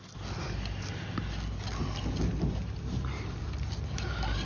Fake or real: real